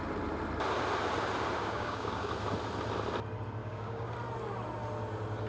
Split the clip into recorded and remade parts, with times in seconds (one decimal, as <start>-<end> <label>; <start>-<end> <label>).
0.0-1.6 recorded; 1.6-2.3 remade; 2.3-3.6 recorded; 3.6-4.1 remade; 4.1-5.5 recorded